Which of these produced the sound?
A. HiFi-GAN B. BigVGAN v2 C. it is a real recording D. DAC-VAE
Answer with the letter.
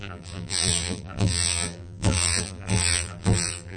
B